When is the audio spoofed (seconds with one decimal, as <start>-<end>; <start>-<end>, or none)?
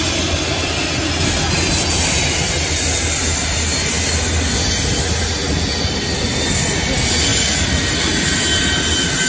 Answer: none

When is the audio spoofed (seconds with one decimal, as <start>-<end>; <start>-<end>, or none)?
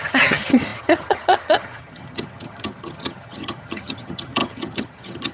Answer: 0.0-5.3